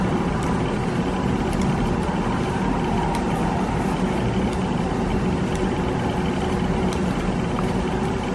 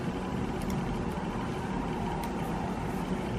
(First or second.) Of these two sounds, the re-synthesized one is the first